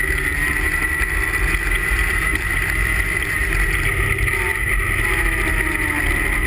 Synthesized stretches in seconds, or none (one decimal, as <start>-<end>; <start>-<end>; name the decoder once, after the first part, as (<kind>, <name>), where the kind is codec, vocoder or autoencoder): 2.0-3.5 (vocoder, BigVGAN v2)